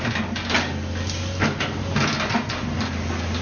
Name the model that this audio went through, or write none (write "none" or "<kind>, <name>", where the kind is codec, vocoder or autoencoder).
none